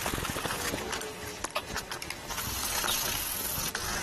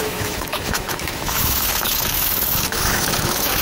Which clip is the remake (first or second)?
second